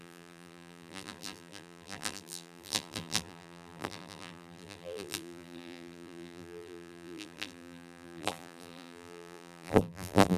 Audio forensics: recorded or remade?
remade